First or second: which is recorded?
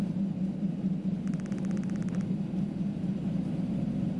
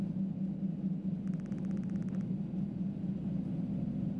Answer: second